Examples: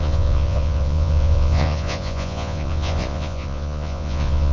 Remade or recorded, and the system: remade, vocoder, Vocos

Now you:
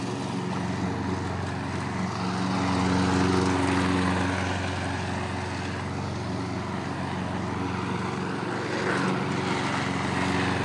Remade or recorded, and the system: recorded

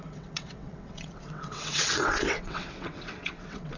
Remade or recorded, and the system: remade, vocoder, WaveNeXt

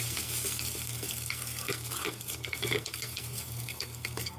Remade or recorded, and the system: remade, codec, SNAC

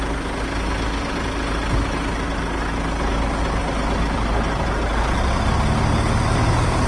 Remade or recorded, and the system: recorded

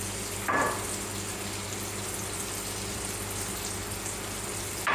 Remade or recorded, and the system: recorded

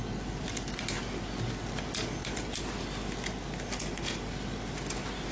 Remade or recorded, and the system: recorded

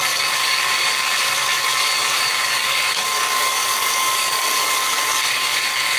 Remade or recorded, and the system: remade, codec, DAC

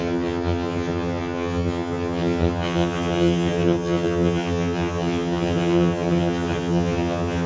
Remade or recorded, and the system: remade, vocoder, HiFi-GAN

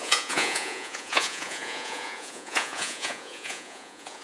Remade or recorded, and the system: remade, vocoder, Vocos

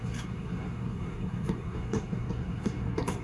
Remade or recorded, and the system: remade, codec, SNAC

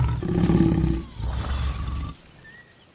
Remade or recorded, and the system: recorded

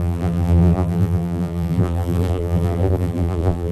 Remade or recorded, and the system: remade, vocoder, BigVGAN v2